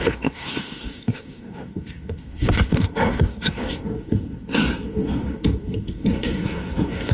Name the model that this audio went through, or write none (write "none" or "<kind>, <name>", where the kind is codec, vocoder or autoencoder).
codec, SNAC